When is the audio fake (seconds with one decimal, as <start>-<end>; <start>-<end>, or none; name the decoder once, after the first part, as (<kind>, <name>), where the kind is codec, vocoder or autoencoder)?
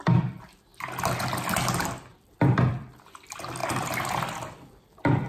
0.0-0.7 (vocoder, BigVGAN v2); 2.1-5.3